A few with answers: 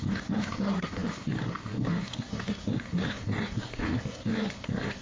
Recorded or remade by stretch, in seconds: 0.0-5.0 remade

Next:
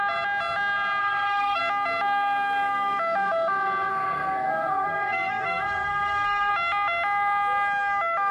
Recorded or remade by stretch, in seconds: 0.0-1.0 recorded; 1.0-1.6 remade; 1.6-3.9 recorded; 3.9-6.5 remade; 6.5-8.3 recorded

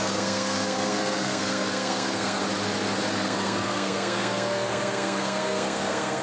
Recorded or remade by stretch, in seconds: 0.0-2.4 remade; 2.4-3.1 recorded; 3.1-6.2 remade

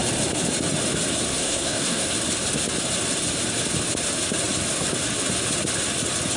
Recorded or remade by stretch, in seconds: 0.0-1.3 recorded; 1.3-2.1 remade; 2.1-6.4 recorded

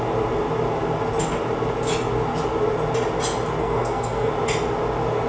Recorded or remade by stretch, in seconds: 0.0-3.6 recorded; 3.6-4.3 remade; 4.3-5.3 recorded

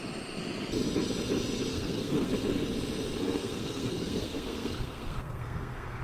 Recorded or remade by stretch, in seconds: 0.0-1.7 recorded; 1.7-2.3 remade; 2.3-3.2 recorded; 3.2-6.0 remade

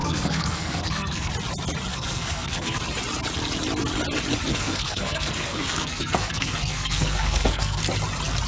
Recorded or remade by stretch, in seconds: 0.0-1.3 remade; 1.3-1.9 recorded; 1.9-2.8 remade; 2.8-4.5 recorded; 4.5-7.8 remade; 7.8-8.5 recorded

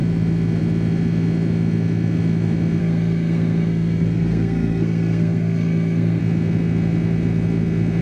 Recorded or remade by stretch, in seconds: 0.0-2.8 recorded; 2.8-6.2 remade; 6.2-8.0 recorded